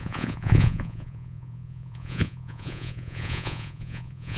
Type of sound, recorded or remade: remade